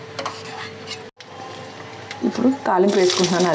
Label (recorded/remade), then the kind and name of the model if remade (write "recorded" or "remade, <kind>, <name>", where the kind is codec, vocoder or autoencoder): recorded